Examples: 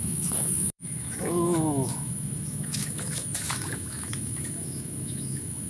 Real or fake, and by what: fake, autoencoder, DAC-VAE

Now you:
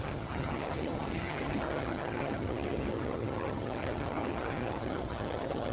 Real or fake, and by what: fake, vocoder, HiFi-GAN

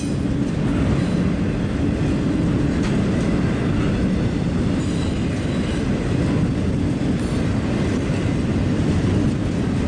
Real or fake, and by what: real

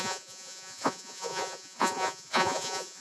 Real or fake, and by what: fake, vocoder, Vocos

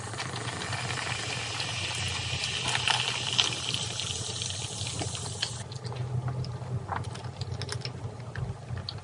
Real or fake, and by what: real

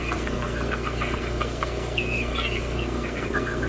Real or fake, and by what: fake, codec, SNAC